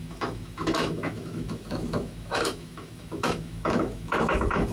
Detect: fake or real fake